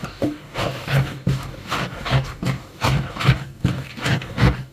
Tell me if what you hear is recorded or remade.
remade